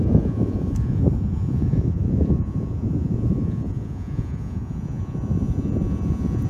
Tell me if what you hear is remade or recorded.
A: remade